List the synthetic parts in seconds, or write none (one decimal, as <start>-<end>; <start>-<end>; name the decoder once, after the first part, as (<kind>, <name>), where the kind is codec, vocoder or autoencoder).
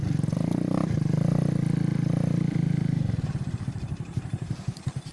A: 1.9-5.1 (vocoder, BigVGAN v2)